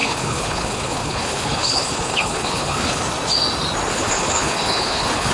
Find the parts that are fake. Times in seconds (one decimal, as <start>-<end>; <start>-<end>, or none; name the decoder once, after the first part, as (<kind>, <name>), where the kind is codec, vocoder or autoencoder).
0.0-3.0 (codec, HILCodec); 3.9-5.3